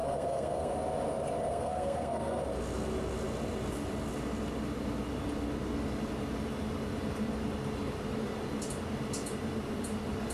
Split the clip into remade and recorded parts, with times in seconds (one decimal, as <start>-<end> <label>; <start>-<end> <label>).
0.0-0.7 remade; 0.7-1.5 recorded; 1.5-2.4 remade; 2.4-10.3 recorded